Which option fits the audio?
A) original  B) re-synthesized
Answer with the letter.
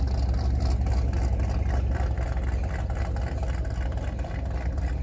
A